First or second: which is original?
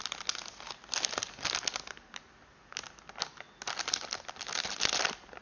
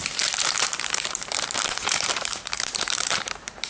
first